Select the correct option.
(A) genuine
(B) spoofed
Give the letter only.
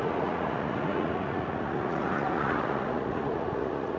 B